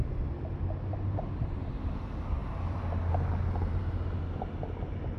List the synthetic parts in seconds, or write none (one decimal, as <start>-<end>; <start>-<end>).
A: none